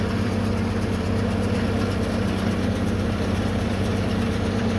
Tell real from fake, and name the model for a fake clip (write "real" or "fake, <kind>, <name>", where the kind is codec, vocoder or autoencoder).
fake, vocoder, BigVGAN v2